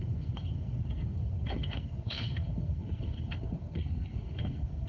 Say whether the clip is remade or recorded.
remade